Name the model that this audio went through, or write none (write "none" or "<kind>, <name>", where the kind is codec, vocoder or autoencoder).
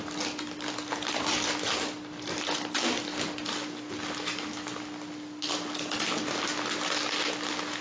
none